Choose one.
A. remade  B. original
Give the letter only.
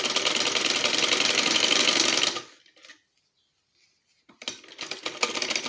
B